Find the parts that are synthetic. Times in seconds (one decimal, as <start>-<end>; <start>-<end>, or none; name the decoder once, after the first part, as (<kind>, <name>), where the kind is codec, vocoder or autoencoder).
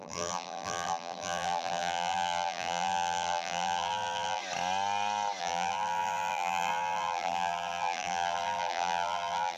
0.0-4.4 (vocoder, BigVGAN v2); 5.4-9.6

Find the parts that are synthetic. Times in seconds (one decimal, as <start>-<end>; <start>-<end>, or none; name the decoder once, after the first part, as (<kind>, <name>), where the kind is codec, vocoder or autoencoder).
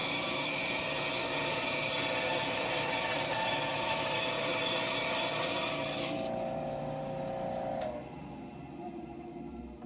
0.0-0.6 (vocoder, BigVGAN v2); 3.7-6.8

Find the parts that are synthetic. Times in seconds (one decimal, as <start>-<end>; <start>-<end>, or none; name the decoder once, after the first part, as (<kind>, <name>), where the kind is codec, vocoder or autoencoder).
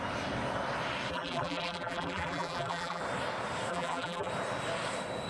1.1-3.0 (vocoder, BigVGAN v2); 3.7-4.3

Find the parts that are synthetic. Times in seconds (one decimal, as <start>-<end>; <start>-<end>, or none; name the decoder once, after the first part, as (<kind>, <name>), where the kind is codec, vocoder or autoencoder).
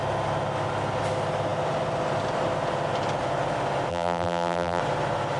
3.9-4.8 (vocoder, BigVGAN v2)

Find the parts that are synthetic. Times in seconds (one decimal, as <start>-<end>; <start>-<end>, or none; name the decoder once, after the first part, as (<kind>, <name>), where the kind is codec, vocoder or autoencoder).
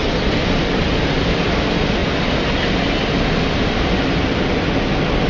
0.0-1.4 (vocoder, BigVGAN v2)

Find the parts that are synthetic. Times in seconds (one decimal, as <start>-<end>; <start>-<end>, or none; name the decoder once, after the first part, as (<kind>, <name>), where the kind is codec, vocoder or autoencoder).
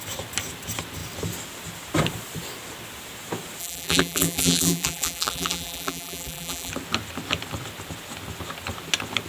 3.6-6.7 (vocoder, BigVGAN v2)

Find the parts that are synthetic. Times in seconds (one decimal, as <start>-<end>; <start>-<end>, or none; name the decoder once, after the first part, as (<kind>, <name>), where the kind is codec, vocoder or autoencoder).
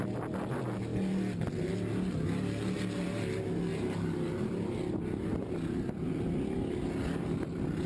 3.7-4.5 (vocoder, BigVGAN v2)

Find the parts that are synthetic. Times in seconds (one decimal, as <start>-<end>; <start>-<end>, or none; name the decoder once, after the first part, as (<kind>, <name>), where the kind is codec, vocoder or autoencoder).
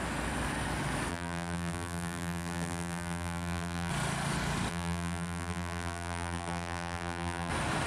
1.1-3.9 (vocoder, BigVGAN v2); 4.7-7.5